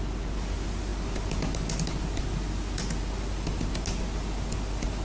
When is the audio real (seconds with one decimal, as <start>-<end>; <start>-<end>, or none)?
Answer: 0.0-5.0